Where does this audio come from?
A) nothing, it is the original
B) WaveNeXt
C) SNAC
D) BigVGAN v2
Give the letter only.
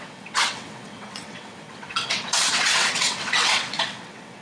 B